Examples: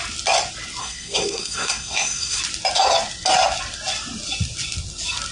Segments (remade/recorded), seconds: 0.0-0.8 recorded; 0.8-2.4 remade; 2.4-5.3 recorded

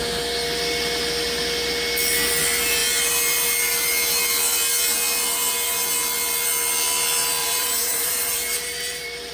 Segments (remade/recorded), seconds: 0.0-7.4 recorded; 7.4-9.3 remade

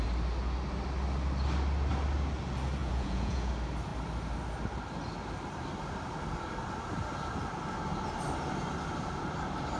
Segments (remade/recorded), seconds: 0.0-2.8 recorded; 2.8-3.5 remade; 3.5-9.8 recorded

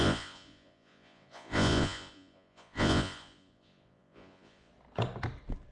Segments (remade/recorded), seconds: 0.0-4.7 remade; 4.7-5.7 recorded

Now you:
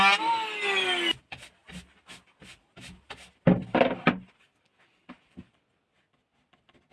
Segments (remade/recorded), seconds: 0.0-6.9 recorded

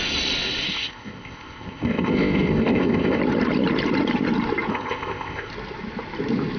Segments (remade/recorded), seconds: 0.0-0.7 recorded; 0.7-3.2 remade; 3.2-4.7 recorded; 4.7-5.5 remade; 5.5-6.6 recorded

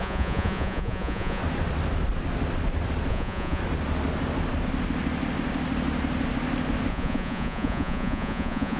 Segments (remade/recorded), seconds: 0.0-1.4 remade; 1.4-3.1 recorded; 3.1-3.6 remade; 3.6-6.9 recorded; 6.9-8.8 remade